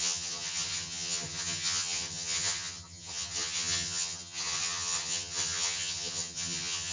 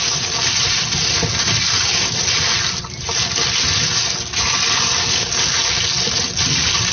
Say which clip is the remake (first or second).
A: first